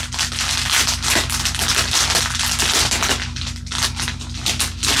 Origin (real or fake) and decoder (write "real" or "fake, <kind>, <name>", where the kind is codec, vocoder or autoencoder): real